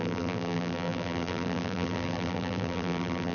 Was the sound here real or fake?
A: fake